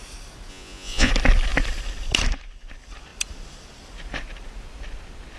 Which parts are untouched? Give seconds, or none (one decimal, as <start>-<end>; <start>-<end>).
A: 0.0-0.5; 1.1-5.4